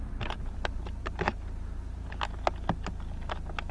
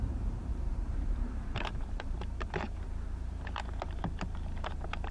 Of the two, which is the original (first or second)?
first